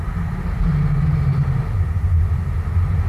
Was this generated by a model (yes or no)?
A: no